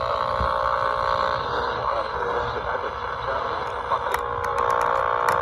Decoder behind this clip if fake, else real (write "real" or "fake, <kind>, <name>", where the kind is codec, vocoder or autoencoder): real